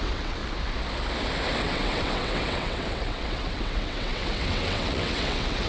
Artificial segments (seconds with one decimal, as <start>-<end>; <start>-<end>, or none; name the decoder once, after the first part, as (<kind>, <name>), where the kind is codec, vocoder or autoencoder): 0.0-0.4 (vocoder, WaveNeXt); 1.6-5.7